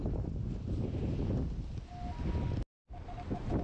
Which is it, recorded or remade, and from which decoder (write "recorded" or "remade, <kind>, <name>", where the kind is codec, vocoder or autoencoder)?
recorded